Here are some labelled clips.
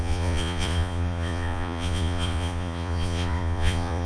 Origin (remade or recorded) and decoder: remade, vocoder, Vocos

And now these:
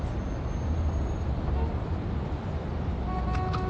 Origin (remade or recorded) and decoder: recorded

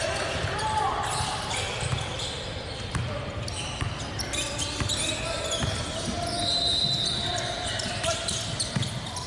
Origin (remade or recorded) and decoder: recorded